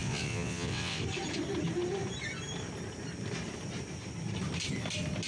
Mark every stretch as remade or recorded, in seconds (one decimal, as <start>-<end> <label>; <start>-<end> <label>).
0.0-1.0 remade; 1.0-5.3 recorded